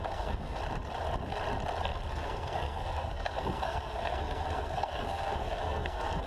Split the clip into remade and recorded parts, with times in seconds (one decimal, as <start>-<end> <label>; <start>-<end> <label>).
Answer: 0.0-0.6 remade; 0.6-2.1 recorded; 2.1-6.3 remade

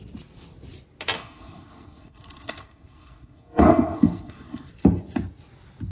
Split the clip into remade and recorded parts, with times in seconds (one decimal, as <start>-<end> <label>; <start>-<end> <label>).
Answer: 0.0-1.2 recorded; 1.2-4.7 remade; 4.7-5.9 recorded

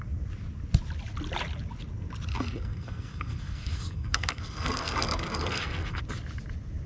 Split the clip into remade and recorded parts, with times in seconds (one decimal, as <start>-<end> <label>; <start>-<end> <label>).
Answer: 0.0-2.3 recorded; 2.3-6.0 remade; 6.0-6.9 recorded

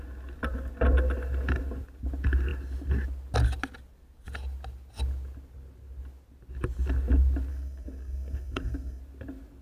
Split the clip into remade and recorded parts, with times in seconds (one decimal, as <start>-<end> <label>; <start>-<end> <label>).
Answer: 0.0-7.5 recorded; 7.5-9.0 remade; 9.0-9.6 recorded

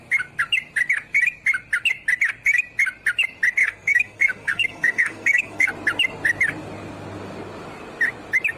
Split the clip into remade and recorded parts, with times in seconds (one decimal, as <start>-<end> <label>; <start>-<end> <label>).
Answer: 0.0-3.6 recorded; 3.6-5.7 remade; 5.7-8.6 recorded